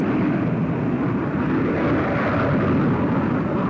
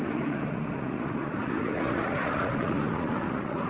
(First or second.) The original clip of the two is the first